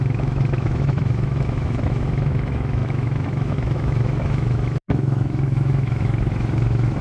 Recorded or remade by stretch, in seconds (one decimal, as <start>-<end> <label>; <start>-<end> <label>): 0.0-7.0 remade